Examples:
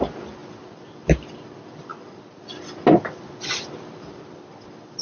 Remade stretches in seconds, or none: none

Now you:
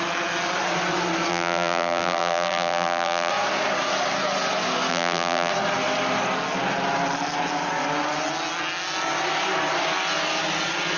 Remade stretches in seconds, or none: 1.3-3.3 (vocoder, BigVGAN v2); 4.9-5.5

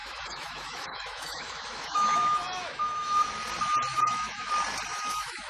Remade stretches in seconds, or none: 0.0-3.3 (autoencoder, DAC-VAE); 3.9-4.5; 4.9-5.5

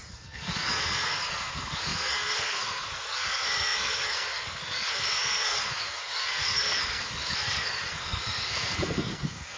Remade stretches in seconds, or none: 0.0-9.6 (codec, SNAC)

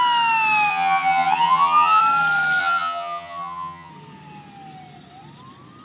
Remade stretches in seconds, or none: 0.7-2.0 (vocoder, HiFi-GAN); 2.6-3.9